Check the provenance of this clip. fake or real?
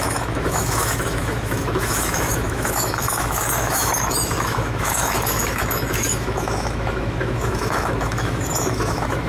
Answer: fake